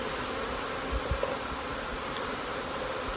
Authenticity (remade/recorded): recorded